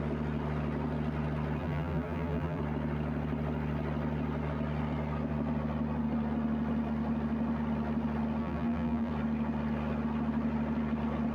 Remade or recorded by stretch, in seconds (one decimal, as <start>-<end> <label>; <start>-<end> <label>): 0.0-1.6 recorded; 1.6-2.6 remade; 2.6-8.4 recorded; 8.4-9.1 remade; 9.1-11.3 recorded